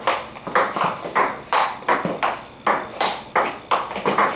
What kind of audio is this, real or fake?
real